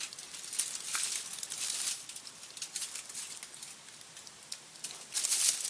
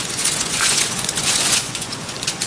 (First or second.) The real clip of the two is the first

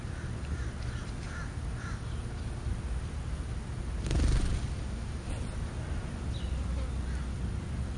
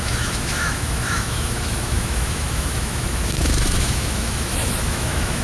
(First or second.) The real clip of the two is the first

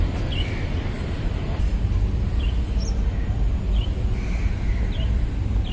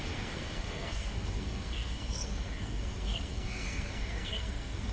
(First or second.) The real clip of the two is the first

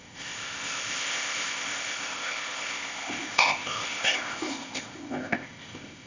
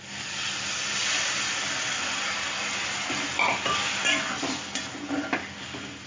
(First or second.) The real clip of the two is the second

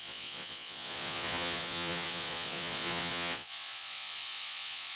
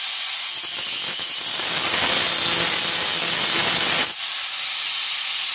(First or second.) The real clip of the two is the second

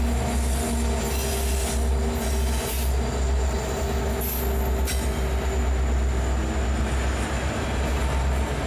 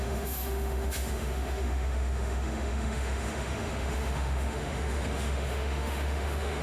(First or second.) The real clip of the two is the first